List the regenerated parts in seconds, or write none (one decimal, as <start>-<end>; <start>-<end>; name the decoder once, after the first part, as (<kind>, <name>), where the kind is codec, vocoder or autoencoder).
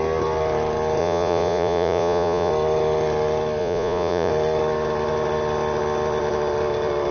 1.0-2.5 (vocoder, Vocos); 3.6-4.3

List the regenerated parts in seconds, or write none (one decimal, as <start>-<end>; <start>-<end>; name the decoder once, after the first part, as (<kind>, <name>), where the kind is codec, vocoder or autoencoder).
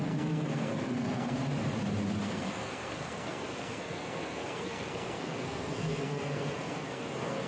0.0-1.4 (codec, SNAC); 2.2-7.5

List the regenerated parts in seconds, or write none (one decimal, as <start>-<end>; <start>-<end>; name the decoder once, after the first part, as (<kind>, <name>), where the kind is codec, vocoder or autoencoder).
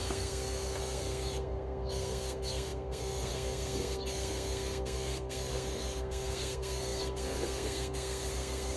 0.0-8.8 (codec, SNAC)